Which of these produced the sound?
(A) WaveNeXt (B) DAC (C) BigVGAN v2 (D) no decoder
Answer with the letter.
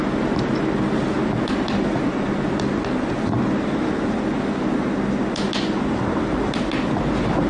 D